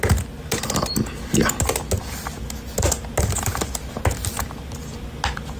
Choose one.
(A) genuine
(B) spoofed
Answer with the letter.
A